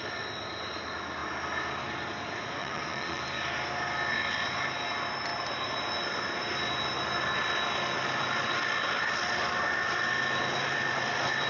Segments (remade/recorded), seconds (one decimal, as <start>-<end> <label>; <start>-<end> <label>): 0.0-2.6 recorded; 2.6-3.2 remade; 3.2-11.5 recorded